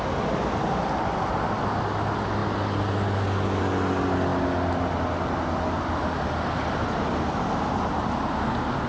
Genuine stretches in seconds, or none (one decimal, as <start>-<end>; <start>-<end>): 0.0-8.9